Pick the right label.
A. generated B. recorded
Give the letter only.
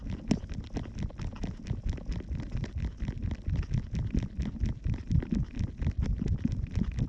B